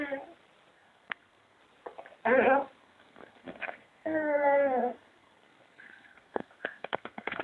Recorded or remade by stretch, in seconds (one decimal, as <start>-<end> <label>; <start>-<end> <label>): 0.0-0.7 recorded; 0.7-1.6 remade; 1.6-2.8 recorded; 2.8-7.4 remade